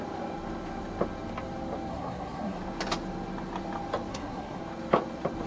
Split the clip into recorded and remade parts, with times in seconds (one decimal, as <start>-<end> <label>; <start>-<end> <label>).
0.0-1.9 recorded; 1.9-2.6 remade; 2.6-4.1 recorded; 4.1-4.6 remade; 4.6-5.5 recorded